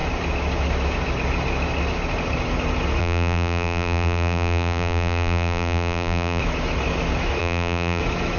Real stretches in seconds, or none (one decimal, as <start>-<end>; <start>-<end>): 0.0-3.0; 6.4-7.4; 8.0-8.4